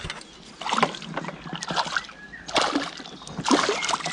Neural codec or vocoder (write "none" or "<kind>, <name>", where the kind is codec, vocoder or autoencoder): none